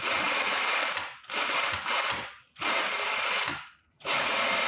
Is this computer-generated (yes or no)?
no